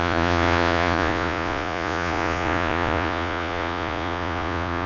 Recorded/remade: remade